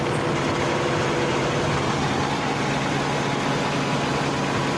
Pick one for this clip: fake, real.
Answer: real